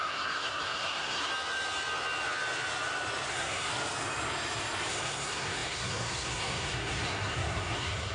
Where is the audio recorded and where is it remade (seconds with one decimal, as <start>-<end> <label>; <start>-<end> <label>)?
0.0-1.3 remade; 1.3-3.3 recorded; 3.3-3.7 remade; 3.7-4.9 recorded; 4.9-8.1 remade